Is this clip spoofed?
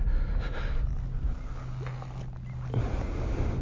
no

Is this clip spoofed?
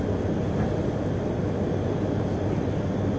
no